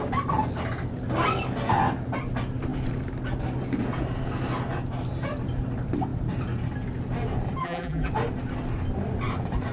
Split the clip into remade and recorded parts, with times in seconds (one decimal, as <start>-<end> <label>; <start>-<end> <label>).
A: 0.0-7.6 recorded; 7.6-8.1 remade; 8.1-9.7 recorded